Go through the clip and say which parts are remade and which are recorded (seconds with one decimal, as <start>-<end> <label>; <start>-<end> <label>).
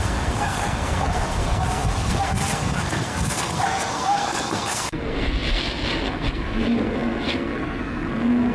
0.0-8.5 remade